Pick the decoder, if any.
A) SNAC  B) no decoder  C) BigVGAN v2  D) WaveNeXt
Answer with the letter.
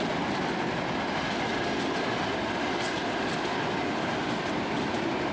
B